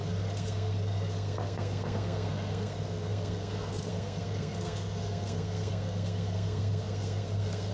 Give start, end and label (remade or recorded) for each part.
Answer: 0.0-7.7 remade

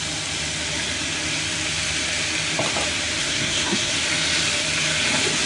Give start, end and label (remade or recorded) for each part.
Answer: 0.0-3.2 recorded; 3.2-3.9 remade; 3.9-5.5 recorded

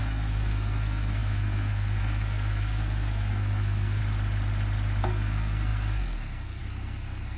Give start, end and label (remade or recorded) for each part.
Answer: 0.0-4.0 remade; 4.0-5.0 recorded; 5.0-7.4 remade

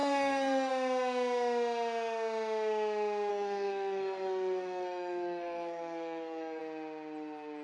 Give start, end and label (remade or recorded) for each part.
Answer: 0.0-0.7 remade; 0.7-3.3 recorded; 3.3-6.6 remade; 6.6-7.6 recorded

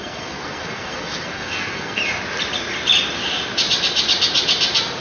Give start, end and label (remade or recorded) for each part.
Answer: 0.0-2.0 remade; 2.0-5.0 recorded